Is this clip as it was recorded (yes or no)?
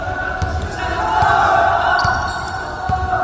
yes